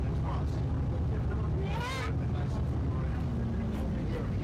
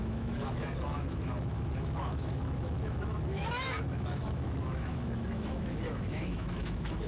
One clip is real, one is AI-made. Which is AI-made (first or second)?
second